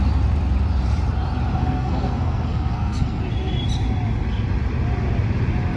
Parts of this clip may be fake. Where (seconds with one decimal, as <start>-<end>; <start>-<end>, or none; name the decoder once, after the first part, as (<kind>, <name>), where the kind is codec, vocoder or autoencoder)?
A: 1.6-3.2 (codec, SNAC)